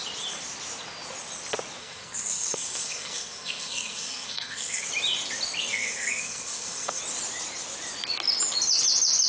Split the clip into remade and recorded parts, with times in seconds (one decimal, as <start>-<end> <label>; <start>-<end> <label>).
0.0-1.8 recorded; 1.8-4.9 remade; 4.9-5.7 recorded; 5.7-7.0 remade; 7.0-9.3 recorded